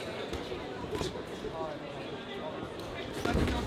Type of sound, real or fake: real